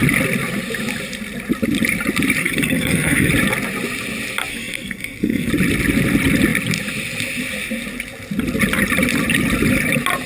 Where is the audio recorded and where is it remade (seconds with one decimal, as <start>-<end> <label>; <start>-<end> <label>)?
0.0-2.4 recorded; 2.4-3.3 remade; 3.3-4.5 recorded; 4.5-5.5 remade; 5.5-10.3 recorded